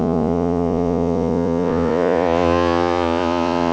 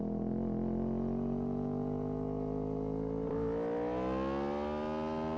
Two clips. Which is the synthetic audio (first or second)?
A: first